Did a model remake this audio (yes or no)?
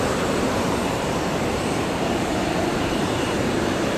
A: yes